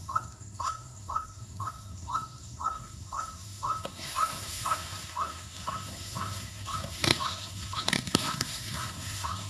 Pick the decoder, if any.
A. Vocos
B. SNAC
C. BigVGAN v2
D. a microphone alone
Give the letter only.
B